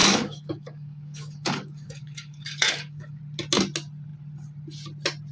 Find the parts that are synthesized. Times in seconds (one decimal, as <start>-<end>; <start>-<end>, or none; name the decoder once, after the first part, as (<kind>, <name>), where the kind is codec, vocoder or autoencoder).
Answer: 0.0-3.2 (codec, DAC)